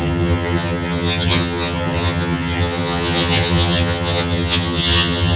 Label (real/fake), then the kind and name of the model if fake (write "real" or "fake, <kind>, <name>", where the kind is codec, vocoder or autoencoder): fake, vocoder, HiFi-GAN